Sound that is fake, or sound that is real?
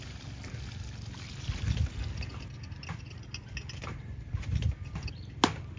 real